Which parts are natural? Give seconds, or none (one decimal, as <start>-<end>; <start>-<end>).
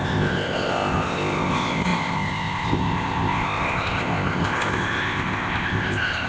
none